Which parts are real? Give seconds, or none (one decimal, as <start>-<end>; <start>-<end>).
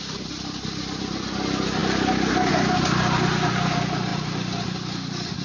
0.0-5.4